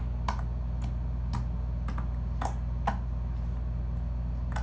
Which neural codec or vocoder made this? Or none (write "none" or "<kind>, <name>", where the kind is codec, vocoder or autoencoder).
none